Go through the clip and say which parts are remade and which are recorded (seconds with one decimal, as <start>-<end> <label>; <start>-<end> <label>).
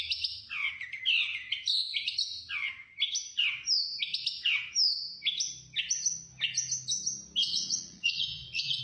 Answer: 0.0-7.4 recorded; 7.4-8.8 remade